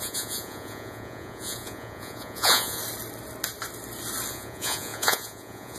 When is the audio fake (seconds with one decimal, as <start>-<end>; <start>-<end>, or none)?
0.0-2.8; 4.3-5.8

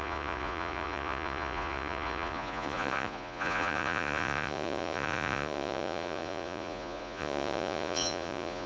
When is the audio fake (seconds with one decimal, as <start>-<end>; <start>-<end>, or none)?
0.0-8.7

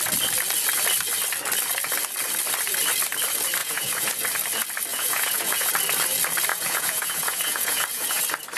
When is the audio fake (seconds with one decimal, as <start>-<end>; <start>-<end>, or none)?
3.6-4.1; 4.9-5.7; 6.5-8.2

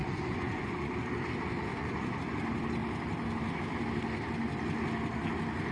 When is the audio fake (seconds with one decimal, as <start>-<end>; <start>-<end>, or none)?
0.0-0.9; 1.7-2.2

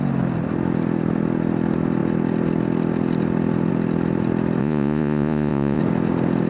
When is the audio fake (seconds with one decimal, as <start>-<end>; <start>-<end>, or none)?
4.6-5.8

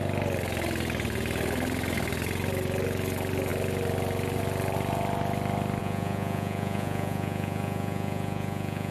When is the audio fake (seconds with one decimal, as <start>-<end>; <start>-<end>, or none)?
5.8-8.9